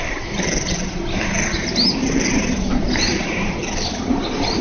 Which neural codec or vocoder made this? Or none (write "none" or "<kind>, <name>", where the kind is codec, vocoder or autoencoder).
none